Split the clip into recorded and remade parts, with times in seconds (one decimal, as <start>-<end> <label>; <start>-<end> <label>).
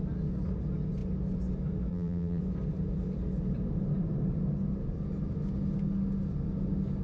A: 0.0-1.9 recorded; 1.9-2.4 remade; 2.4-7.0 recorded